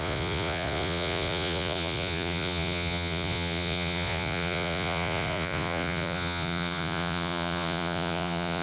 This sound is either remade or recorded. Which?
remade